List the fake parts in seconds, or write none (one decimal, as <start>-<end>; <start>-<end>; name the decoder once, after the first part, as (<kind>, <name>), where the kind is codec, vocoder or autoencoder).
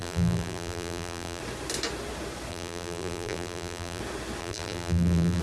0.0-1.4 (vocoder, BigVGAN v2); 2.5-4.0; 4.4-5.4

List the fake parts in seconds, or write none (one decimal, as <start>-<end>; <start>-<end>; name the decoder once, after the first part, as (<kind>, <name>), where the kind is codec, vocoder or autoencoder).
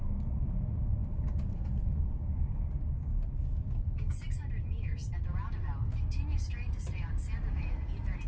none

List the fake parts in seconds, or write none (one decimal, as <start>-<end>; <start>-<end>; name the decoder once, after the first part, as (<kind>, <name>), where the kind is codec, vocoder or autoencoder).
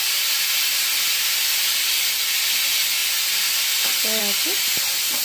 1.1-2.6 (vocoder, BigVGAN v2); 3.0-4.2